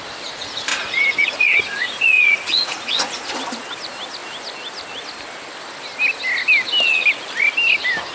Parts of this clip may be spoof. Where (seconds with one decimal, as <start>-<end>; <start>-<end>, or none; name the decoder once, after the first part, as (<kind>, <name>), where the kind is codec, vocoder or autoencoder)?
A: 0.7-3.3 (vocoder, Vocos)